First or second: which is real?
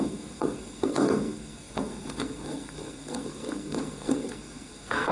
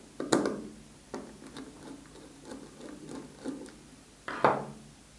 second